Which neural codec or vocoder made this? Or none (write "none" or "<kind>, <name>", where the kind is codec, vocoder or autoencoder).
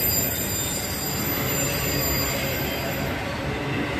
none